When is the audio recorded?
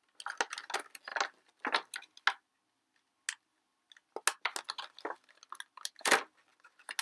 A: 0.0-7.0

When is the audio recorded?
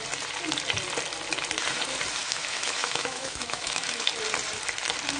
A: 0.0-2.2; 4.1-5.2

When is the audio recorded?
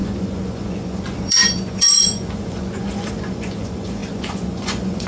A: none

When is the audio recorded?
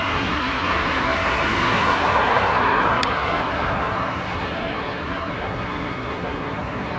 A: none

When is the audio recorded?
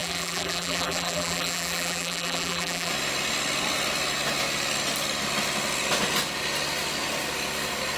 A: 2.9-8.0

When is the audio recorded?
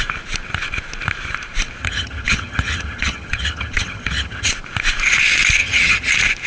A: 0.0-1.8; 4.5-5.6; 6.1-6.5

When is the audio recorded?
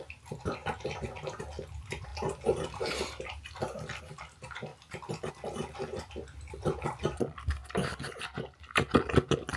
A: 0.0-9.6